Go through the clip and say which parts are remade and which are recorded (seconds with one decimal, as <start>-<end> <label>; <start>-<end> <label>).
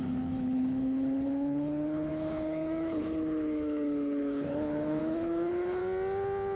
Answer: 0.0-5.8 remade; 5.8-6.6 recorded